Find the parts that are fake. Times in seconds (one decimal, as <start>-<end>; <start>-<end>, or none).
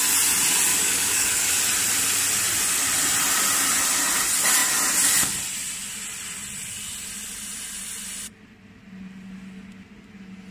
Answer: 0.7-1.5